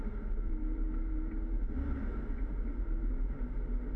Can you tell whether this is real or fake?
real